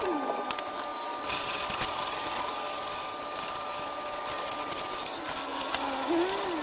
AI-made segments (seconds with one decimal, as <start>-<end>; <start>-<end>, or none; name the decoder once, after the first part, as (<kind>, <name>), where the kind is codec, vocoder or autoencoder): none